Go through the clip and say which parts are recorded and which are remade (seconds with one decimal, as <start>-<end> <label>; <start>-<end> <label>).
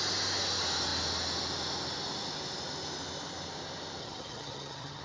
0.0-4.0 recorded; 4.0-5.0 remade